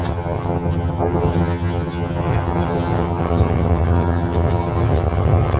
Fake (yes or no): yes